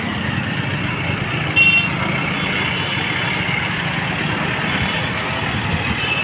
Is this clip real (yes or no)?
yes